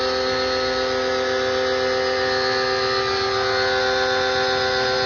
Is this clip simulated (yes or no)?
no